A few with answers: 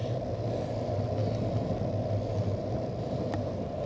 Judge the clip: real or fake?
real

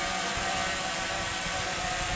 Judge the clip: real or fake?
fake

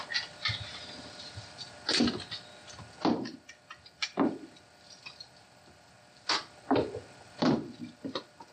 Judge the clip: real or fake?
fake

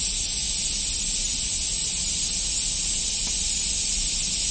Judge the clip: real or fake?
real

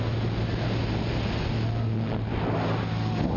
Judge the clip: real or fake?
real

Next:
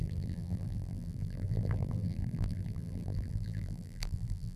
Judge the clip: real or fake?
fake